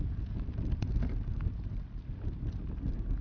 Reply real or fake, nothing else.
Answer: real